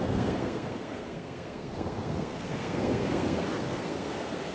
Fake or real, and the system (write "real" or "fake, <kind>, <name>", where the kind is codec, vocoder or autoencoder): fake, codec, SNAC